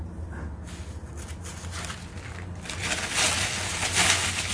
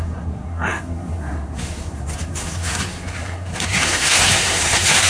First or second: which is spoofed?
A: second